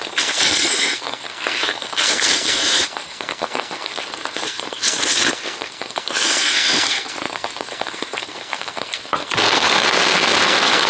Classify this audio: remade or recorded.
remade